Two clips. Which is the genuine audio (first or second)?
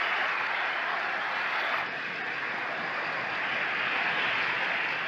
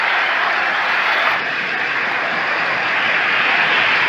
first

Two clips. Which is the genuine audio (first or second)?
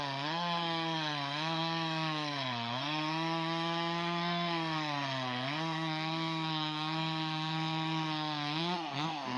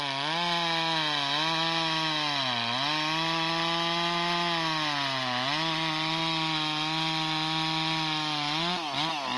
second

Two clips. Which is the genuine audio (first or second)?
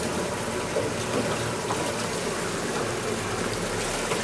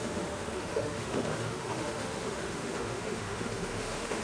first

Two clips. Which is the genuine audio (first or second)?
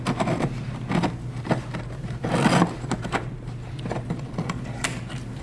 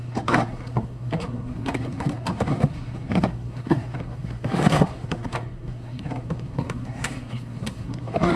first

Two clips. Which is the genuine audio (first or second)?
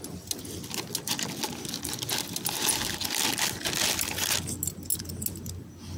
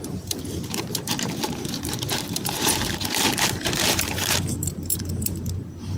first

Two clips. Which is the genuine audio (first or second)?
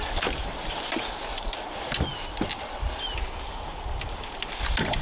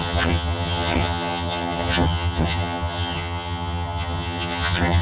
first